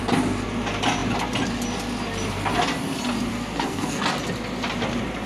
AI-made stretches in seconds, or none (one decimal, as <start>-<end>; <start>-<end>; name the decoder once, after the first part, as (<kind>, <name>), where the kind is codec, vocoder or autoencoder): 3.3-4.0 (codec, SNAC)